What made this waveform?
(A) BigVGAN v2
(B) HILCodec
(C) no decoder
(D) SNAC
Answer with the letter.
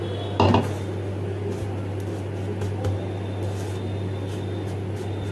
C